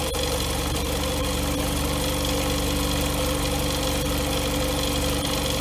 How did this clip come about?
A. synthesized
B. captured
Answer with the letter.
B